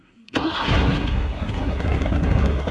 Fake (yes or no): yes